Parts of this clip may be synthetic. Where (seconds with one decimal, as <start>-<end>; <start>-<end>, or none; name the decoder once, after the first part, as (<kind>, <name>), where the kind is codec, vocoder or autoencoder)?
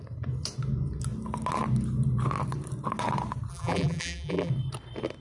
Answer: 3.5-4.5 (vocoder, BigVGAN v2)